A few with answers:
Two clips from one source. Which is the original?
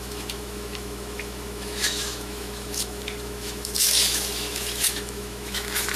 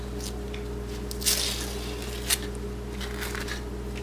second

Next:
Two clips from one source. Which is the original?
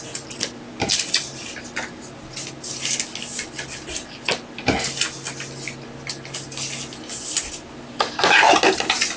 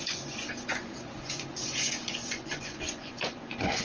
first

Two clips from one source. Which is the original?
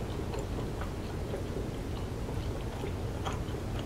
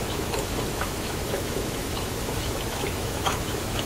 first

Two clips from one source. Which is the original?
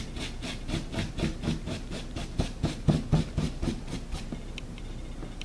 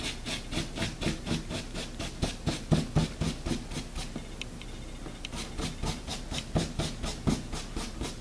second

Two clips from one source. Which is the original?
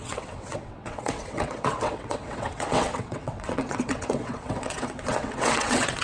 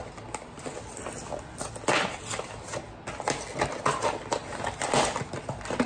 second